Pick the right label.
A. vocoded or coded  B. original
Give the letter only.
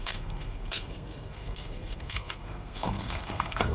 A